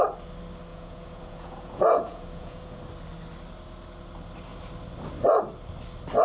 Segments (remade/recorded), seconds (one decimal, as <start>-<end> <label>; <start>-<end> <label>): 0.0-0.7 recorded; 0.7-2.8 remade; 2.8-6.2 recorded